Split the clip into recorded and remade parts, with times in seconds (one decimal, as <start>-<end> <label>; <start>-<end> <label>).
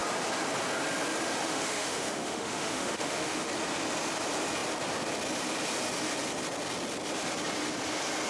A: 0.0-1.4 recorded; 1.4-3.5 remade; 3.5-8.3 recorded